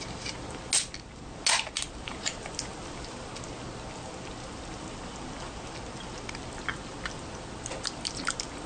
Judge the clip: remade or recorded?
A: recorded